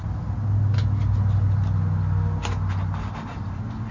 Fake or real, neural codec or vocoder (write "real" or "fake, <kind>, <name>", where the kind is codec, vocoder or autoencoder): real